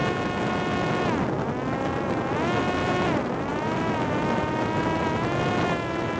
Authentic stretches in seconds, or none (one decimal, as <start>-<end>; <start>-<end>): 0.0-6.2